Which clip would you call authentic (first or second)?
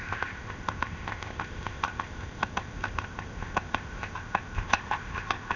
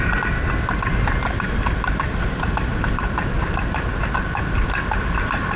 second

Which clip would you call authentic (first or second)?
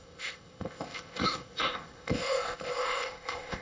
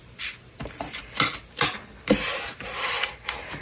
second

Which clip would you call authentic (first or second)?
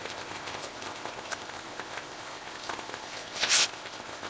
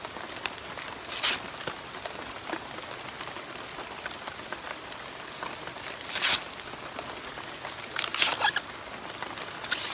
second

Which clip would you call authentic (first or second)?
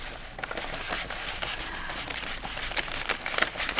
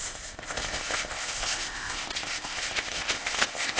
first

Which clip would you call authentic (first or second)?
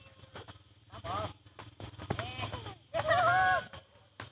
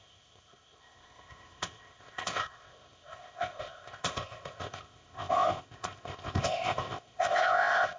first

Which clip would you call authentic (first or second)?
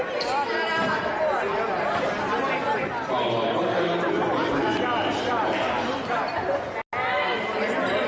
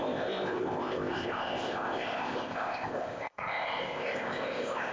first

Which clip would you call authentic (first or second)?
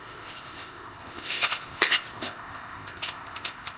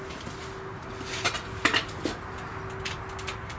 second